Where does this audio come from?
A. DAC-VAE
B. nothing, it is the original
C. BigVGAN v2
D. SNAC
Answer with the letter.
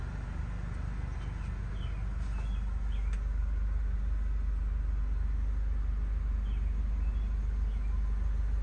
B